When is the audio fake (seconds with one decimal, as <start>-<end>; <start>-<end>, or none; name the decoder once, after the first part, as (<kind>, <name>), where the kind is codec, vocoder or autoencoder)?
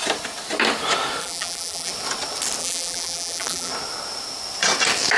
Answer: 1.2-1.9 (vocoder, BigVGAN v2); 2.6-3.7